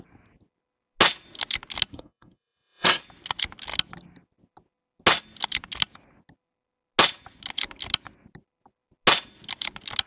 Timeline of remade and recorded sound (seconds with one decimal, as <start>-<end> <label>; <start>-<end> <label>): 0.0-1.9 recorded; 1.9-3.0 remade; 3.0-10.1 recorded